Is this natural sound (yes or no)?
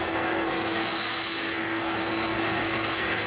no